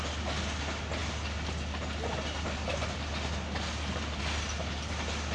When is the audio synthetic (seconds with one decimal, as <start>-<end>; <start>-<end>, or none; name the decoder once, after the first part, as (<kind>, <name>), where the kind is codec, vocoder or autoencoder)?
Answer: none